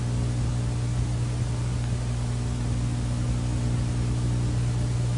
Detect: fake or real real